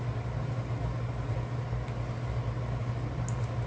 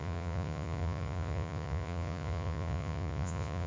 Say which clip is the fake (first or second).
second